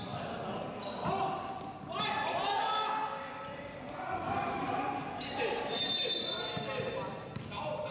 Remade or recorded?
recorded